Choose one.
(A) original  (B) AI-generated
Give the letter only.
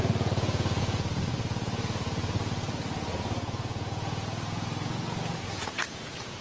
B